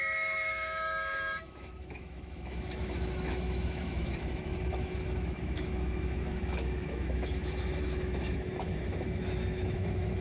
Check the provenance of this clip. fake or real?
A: fake